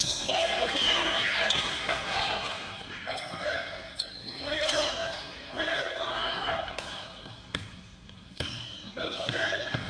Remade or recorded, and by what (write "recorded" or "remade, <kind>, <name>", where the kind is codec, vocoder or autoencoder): remade, codec, SNAC